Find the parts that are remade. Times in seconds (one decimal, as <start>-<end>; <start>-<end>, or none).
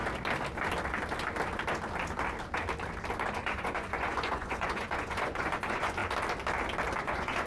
3.3-6.0; 7.0-7.5